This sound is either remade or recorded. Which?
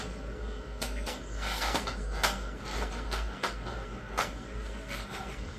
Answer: remade